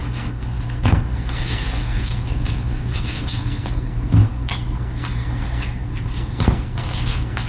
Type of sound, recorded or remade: remade